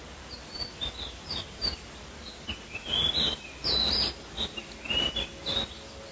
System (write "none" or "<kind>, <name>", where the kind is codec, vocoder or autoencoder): none